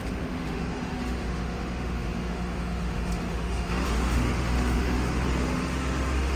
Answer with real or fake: fake